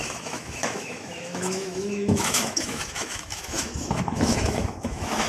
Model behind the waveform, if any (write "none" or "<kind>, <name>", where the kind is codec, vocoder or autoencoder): autoencoder, DAC-VAE